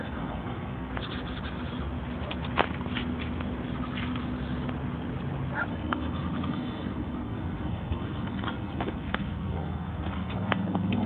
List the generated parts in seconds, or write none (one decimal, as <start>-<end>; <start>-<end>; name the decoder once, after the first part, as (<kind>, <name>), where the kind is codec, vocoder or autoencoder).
0.0-0.9 (codec, SNAC); 5.7-11.1